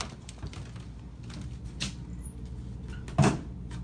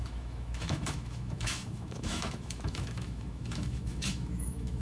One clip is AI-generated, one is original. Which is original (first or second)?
first